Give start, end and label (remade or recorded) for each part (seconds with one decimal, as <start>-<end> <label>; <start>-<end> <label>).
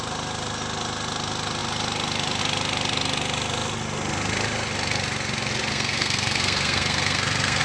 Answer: 0.0-5.7 recorded; 5.7-7.6 remade